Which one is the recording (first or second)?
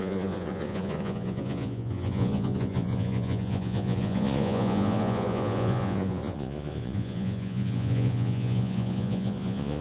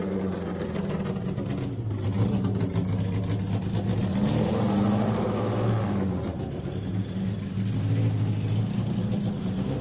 second